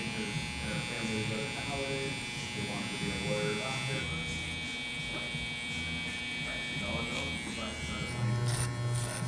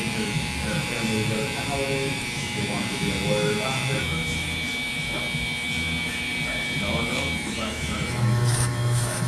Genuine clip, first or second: first